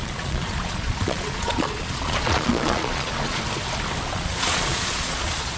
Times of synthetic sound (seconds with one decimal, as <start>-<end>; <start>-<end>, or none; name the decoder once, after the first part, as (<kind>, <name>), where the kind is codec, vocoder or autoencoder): 0.0-3.4 (vocoder, Vocos); 4.1-5.6